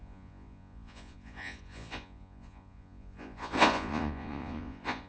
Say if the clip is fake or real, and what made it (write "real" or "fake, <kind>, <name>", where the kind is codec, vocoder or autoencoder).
fake, vocoder, Vocos